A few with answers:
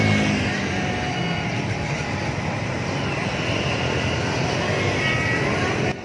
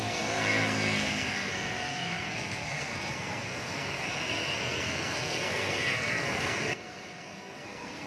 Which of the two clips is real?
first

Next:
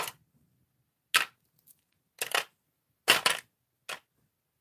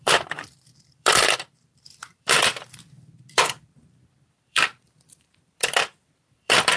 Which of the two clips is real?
first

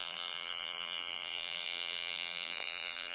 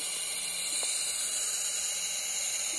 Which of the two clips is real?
second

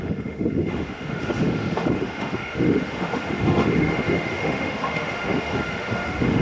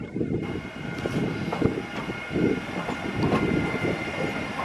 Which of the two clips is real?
second